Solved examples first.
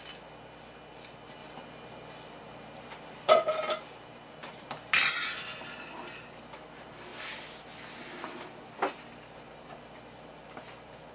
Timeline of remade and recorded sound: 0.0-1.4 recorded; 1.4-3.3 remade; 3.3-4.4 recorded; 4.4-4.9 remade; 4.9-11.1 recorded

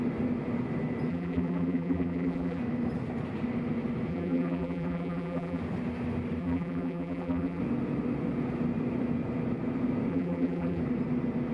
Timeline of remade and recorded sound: 0.0-1.1 recorded; 1.1-2.6 remade; 2.6-4.1 recorded; 4.1-5.6 remade; 5.6-6.4 recorded; 6.4-7.6 remade; 7.6-10.1 recorded; 10.1-10.8 remade; 10.8-11.5 recorded

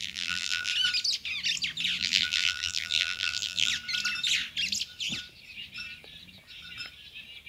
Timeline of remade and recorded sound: 0.0-0.7 remade; 0.7-2.0 recorded; 2.0-3.7 remade; 3.7-7.5 recorded

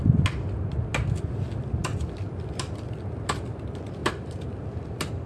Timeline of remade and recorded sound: 0.0-1.8 recorded; 1.8-2.9 remade; 2.9-4.0 recorded; 4.0-5.3 remade

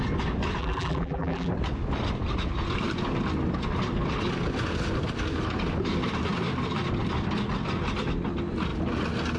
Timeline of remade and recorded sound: 0.0-0.6 recorded; 0.6-1.5 remade; 1.5-9.4 recorded

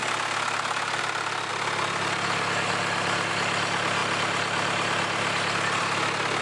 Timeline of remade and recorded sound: 0.0-6.4 recorded